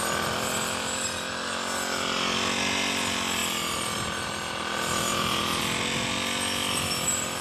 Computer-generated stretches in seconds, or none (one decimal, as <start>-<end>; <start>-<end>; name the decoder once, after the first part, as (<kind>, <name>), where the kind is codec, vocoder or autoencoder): none